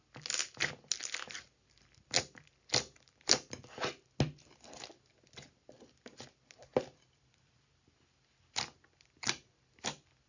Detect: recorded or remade recorded